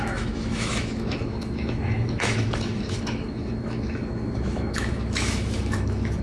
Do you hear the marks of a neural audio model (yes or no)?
yes